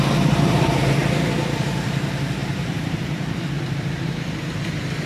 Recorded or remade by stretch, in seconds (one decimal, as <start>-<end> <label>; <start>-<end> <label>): 0.0-1.0 remade; 1.0-1.9 recorded; 1.9-5.1 remade